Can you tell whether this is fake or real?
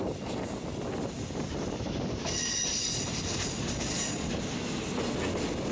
real